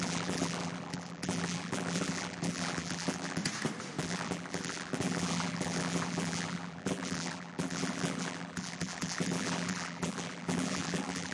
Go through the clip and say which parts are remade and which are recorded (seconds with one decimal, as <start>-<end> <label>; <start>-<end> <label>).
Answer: 0.0-3.4 remade; 3.4-4.0 recorded; 4.0-11.3 remade